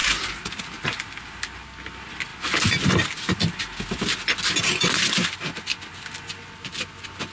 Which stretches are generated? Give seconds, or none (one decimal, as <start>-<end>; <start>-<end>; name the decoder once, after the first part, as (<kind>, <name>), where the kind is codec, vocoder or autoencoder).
none